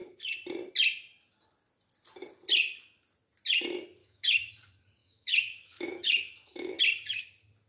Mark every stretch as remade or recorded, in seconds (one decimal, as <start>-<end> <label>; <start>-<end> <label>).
0.0-4.0 recorded; 4.0-4.5 remade; 4.5-5.0 recorded; 5.0-6.8 remade; 6.8-7.7 recorded